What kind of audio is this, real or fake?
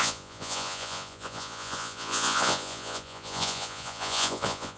fake